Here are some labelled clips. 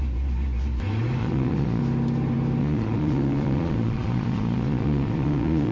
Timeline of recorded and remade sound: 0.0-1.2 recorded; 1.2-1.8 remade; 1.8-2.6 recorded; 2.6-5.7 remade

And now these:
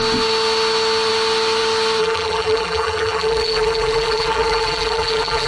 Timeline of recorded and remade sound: 0.0-2.0 recorded; 2.0-5.5 remade

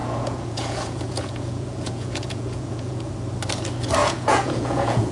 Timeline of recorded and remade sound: 0.0-3.1 remade; 3.1-4.0 recorded; 4.0-5.1 remade

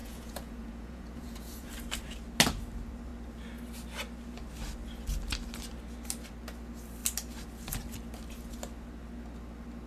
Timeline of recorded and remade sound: 0.0-1.7 remade; 1.7-9.9 recorded

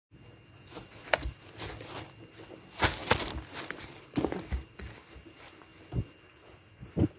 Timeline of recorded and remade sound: 0.0-7.2 recorded

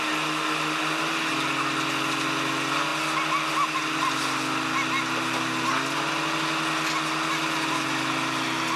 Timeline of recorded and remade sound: 0.0-8.8 recorded

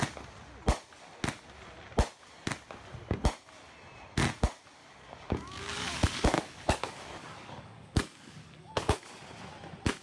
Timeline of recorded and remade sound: 0.0-4.8 recorded; 4.8-9.0 remade; 9.0-10.0 recorded